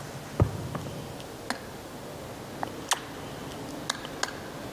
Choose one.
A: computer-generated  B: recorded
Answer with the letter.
B